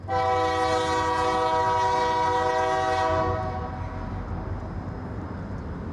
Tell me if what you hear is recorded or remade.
recorded